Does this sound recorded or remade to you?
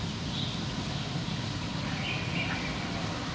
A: recorded